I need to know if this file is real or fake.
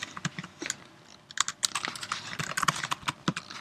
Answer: real